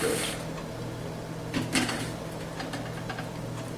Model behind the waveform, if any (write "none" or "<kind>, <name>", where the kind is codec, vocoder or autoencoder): none